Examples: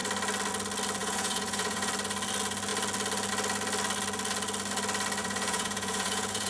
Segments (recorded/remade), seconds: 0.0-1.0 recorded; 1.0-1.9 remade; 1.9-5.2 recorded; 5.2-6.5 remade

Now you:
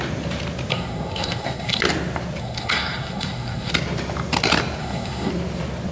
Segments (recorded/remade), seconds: 0.0-0.7 recorded; 0.7-1.8 remade; 1.8-2.4 recorded; 2.4-3.7 remade; 3.7-4.8 recorded; 4.8-5.3 remade; 5.3-5.9 recorded

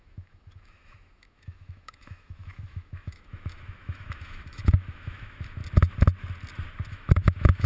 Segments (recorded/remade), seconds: 0.0-5.6 remade; 5.6-6.9 recorded; 6.9-7.7 remade

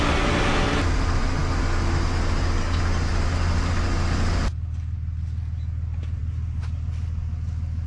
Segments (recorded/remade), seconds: 0.0-7.9 recorded